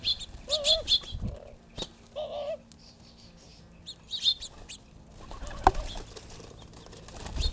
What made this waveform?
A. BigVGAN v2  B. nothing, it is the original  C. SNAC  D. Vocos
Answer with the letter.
B